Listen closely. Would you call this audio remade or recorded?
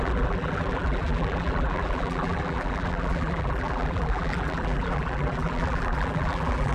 remade